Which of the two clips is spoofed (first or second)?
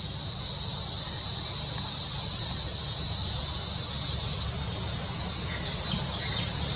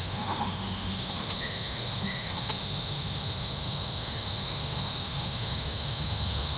second